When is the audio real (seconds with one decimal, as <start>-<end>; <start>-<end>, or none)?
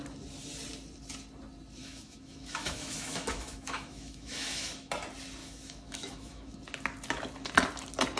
0.0-1.8; 4.9-5.4; 6.6-8.2